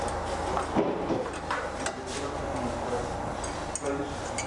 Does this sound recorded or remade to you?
recorded